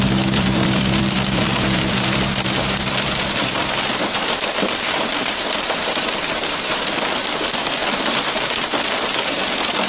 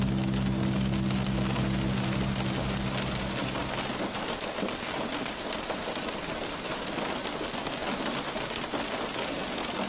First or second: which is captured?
second